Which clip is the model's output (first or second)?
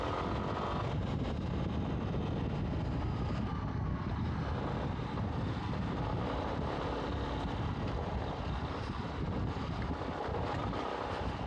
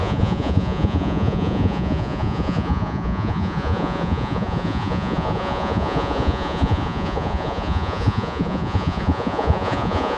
second